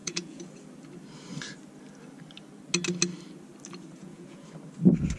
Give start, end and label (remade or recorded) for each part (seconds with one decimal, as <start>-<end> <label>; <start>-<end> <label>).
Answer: 0.0-0.5 remade; 0.5-4.0 recorded; 4.0-4.5 remade; 4.5-5.2 recorded